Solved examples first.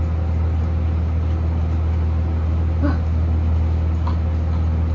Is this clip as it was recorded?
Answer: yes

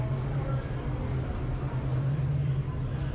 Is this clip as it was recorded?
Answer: yes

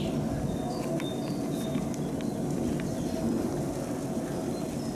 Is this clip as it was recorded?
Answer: yes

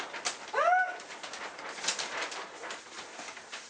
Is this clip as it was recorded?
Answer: yes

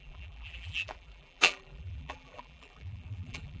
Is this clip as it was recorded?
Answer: no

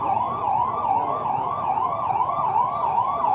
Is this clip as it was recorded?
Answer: yes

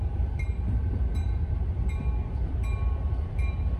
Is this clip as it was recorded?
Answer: no